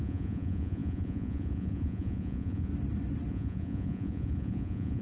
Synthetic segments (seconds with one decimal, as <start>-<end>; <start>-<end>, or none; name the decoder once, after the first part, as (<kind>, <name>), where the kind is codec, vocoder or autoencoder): 0.0-2.7 (vocoder, Vocos); 3.3-5.0